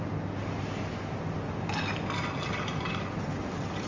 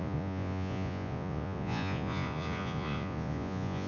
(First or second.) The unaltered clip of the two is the first